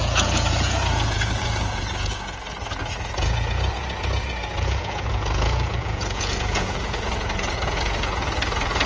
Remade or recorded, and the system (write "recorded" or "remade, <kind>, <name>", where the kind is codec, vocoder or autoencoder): remade, vocoder, Vocos